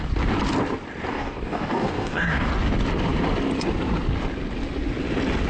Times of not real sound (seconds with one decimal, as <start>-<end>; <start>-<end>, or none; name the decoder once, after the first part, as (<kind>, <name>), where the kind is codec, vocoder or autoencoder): 1.1-2.5 (codec, DAC)